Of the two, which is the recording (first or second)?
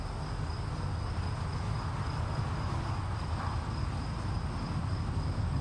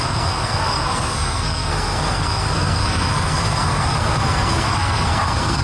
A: first